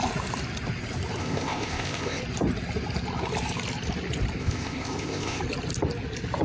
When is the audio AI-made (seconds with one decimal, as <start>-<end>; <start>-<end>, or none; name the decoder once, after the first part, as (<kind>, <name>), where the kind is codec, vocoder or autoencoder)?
1.2-2.2 (codec, ZipCodec); 4.4-5.4